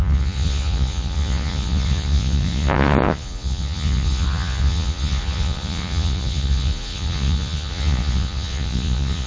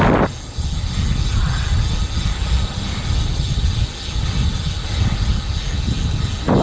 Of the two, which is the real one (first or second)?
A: second